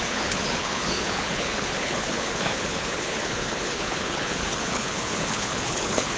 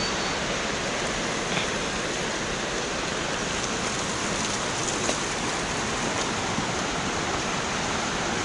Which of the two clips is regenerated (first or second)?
first